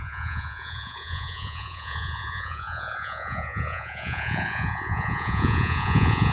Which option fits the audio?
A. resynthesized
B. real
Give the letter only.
A